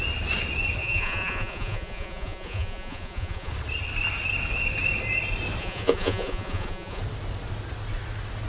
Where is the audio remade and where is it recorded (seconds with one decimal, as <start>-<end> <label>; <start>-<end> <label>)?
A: 0.0-0.8 recorded; 0.8-3.5 remade; 3.5-5.6 recorded; 5.6-7.0 remade; 7.0-8.5 recorded